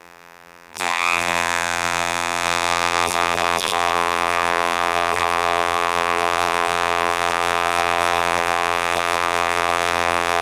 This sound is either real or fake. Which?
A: fake